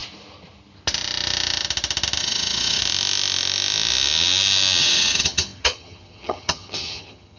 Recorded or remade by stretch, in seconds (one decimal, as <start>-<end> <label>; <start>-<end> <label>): 0.0-2.2 recorded; 2.2-2.8 remade; 2.8-4.8 recorded; 4.8-7.4 remade